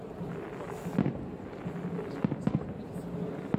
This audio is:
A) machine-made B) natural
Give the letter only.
B